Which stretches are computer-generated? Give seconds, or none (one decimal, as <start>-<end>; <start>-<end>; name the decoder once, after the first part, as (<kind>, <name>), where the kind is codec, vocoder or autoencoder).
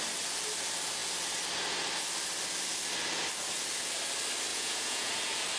4.5-5.1 (vocoder, Vocos)